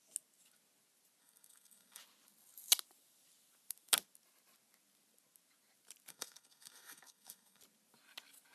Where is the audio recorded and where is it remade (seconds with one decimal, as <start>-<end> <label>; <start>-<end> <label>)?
0.0-1.2 recorded; 1.2-2.0 remade; 2.0-6.1 recorded; 6.1-7.6 remade; 7.6-8.5 recorded